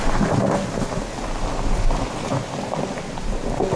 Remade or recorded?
recorded